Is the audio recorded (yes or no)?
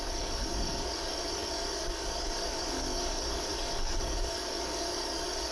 no